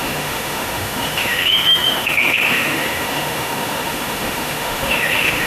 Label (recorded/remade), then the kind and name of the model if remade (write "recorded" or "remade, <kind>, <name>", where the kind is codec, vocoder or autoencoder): remade, autoencoder, DAC-VAE